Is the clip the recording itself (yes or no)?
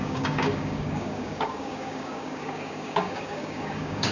no